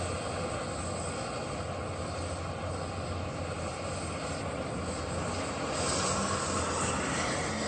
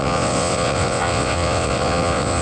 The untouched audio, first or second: first